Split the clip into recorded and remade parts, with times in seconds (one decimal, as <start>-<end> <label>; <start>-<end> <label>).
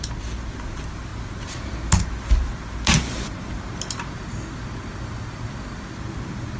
0.0-6.6 recorded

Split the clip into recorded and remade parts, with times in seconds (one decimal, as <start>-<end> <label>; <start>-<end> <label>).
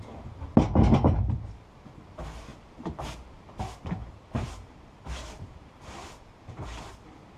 0.0-2.5 recorded; 2.5-3.6 remade; 3.6-4.0 recorded; 4.0-5.8 remade; 5.8-7.4 recorded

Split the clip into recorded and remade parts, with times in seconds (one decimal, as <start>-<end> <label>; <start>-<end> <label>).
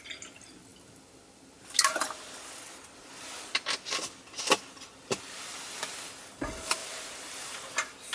0.0-6.8 recorded; 6.8-8.1 remade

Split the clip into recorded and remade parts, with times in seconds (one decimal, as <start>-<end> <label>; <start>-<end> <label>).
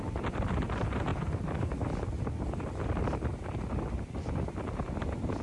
0.0-5.4 recorded